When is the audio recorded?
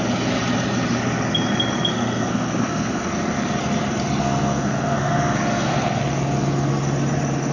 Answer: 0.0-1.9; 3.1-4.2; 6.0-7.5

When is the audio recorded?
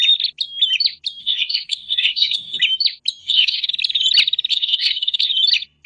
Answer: 0.0-1.2; 2.6-3.2; 3.7-4.5; 5.3-5.9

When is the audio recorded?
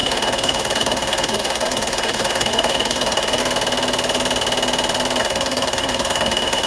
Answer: 3.4-5.2